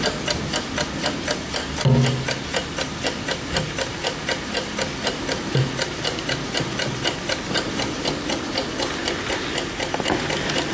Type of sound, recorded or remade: recorded